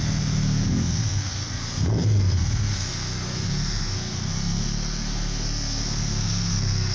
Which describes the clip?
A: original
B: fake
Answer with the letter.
B